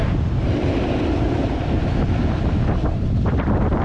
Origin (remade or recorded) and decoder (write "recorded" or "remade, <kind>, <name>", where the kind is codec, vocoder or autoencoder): recorded